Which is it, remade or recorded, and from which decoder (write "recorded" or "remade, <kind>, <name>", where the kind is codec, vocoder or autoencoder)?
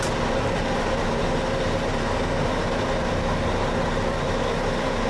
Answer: recorded